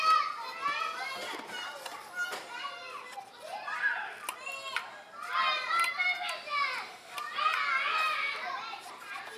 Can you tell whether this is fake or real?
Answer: real